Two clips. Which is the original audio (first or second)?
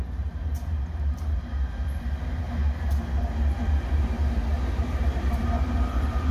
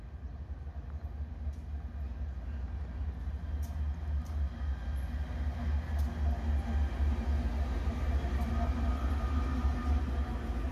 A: second